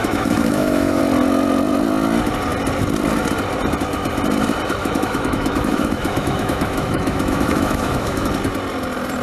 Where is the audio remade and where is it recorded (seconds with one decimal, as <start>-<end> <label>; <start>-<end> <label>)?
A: 0.0-1.0 remade; 1.0-4.8 recorded; 4.8-8.3 remade; 8.3-9.2 recorded

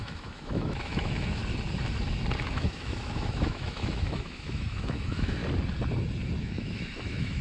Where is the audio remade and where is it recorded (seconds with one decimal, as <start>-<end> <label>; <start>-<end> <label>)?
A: 0.0-1.4 remade; 1.4-2.4 recorded; 2.4-5.4 remade; 5.4-6.4 recorded; 6.4-7.4 remade

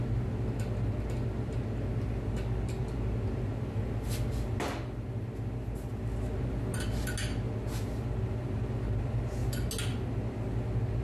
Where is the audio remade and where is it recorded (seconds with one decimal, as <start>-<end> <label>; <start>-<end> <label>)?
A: 0.0-11.0 recorded

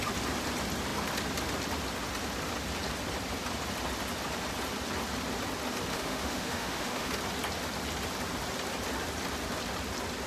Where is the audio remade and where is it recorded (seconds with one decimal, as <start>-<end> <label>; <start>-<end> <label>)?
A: 0.0-5.9 recorded; 5.9-7.1 remade; 7.1-10.3 recorded

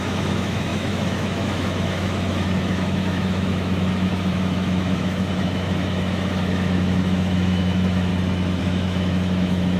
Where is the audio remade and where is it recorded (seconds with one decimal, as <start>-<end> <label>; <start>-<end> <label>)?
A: 0.0-8.1 remade; 8.1-8.6 recorded; 8.6-9.8 remade

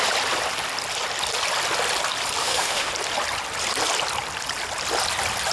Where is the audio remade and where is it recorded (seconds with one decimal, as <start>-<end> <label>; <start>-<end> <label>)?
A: 0.0-2.4 recorded; 2.4-2.9 remade; 2.9-5.5 recorded